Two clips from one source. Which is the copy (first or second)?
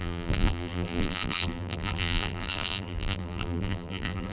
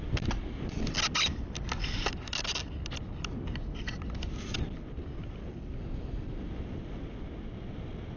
first